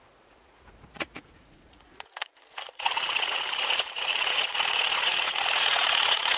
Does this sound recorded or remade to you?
remade